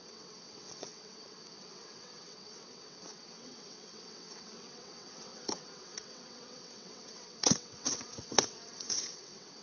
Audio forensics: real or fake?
fake